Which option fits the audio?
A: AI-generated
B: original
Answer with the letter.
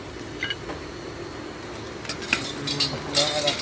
B